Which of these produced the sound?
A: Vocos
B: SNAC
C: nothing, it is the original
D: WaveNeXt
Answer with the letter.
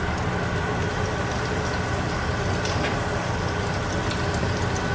C